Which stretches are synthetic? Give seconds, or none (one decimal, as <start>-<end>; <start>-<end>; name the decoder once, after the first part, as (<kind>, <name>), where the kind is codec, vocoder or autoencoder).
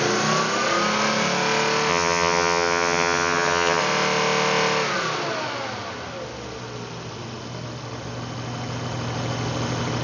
1.9-3.8 (vocoder, HiFi-GAN)